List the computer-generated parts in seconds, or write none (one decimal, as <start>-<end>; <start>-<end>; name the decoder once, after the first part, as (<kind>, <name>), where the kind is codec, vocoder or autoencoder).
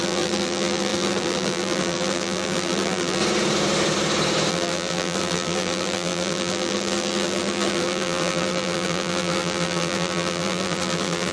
0.0-3.2 (vocoder, BigVGAN v2); 4.5-11.3